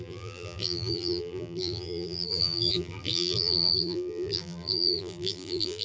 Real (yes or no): no